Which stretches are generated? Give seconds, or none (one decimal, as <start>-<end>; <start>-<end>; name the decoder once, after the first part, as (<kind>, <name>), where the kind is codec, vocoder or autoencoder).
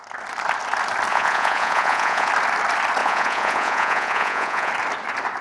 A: 1.1-2.3 (vocoder, Vocos); 3.0-4.7